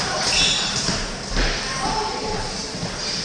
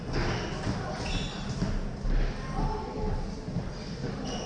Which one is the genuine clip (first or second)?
second